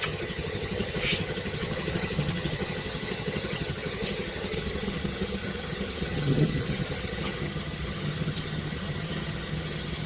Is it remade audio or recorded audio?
remade